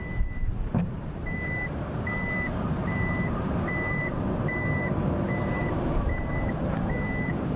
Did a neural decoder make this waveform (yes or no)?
yes